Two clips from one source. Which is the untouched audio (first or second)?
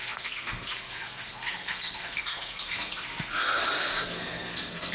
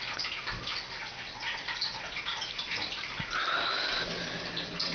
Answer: second